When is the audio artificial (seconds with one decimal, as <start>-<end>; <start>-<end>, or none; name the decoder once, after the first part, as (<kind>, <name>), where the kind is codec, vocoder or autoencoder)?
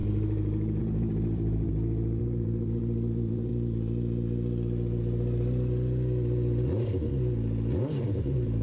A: 0.8-1.7 (vocoder, BigVGAN v2); 2.2-3.5; 8.0-8.6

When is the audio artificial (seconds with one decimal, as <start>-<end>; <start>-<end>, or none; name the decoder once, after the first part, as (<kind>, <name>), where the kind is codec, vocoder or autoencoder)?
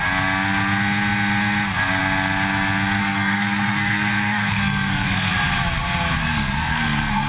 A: 3.0-5.3 (codec, SNAC); 6.2-7.3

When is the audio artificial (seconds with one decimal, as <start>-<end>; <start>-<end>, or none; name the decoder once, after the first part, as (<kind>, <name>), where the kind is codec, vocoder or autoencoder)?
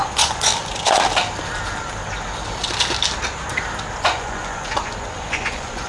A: 0.0-0.5 (vocoder, Vocos); 4.0-5.9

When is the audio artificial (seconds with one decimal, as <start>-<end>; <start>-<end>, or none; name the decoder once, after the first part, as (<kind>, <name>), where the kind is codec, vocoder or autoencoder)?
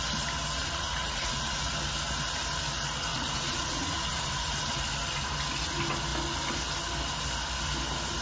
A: 0.6-1.7 (vocoder, Vocos); 3.1-4.3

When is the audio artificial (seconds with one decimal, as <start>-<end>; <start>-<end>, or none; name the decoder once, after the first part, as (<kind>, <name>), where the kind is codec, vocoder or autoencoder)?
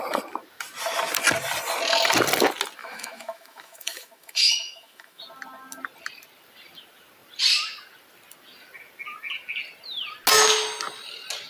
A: 2.8-5.2 (autoencoder, DAC-VAE)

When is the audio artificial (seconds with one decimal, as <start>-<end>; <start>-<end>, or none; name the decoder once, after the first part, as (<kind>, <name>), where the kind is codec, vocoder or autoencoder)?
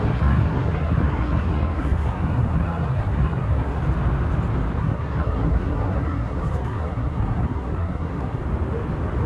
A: 0.0-3.8 (codec, SNAC); 4.8-8.4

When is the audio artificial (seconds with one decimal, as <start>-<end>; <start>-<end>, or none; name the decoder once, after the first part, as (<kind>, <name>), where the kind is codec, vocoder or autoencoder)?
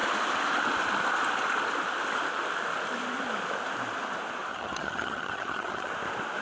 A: 4.5-5.9 (vocoder, HiFi-GAN)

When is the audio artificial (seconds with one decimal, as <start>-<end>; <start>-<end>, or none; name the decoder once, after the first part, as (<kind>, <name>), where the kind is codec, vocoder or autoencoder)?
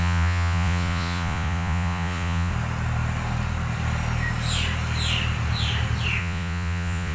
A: 0.0-2.5 (vocoder, Vocos); 6.2-7.1